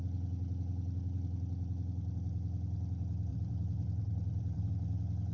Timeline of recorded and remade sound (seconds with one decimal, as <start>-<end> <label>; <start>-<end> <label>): 0.0-3.3 recorded; 3.3-4.7 remade; 4.7-5.3 recorded